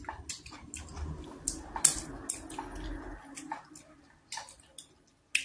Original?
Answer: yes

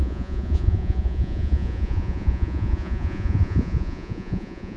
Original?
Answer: no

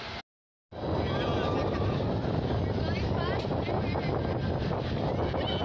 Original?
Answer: yes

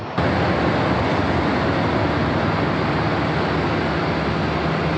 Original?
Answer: yes